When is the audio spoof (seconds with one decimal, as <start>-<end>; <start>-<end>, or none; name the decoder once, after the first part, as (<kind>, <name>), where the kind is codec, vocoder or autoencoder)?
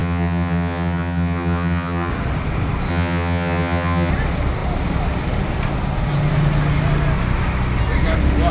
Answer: 0.0-2.1 (vocoder, HiFi-GAN); 2.9-4.1